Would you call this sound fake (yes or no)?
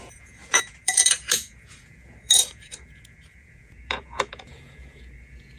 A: yes